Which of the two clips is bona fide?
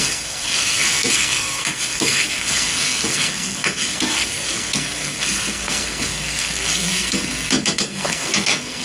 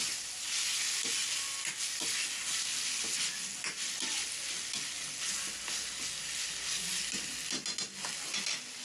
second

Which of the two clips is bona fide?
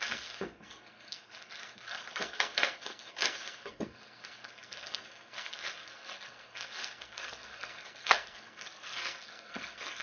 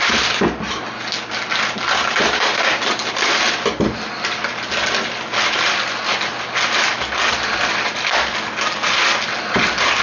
second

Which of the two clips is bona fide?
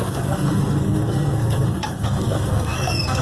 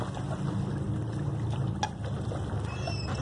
second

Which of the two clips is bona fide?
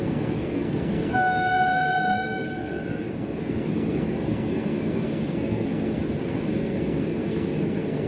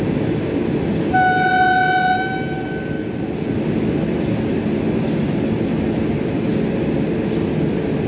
second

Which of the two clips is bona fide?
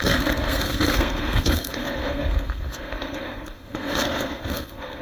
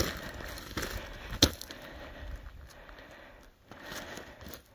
second